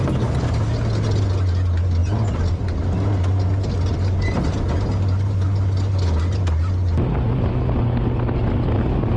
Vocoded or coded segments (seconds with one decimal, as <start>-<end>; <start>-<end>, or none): 2.0-2.9